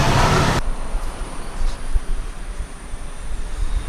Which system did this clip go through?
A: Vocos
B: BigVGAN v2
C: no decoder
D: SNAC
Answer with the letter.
B